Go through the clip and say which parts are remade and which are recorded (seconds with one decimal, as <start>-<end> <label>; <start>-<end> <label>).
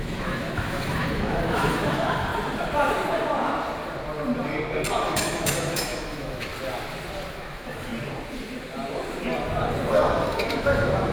0.0-2.3 remade; 2.3-4.9 recorded; 4.9-6.5 remade; 6.5-7.3 recorded; 7.3-7.9 remade; 7.9-9.9 recorded; 9.9-11.1 remade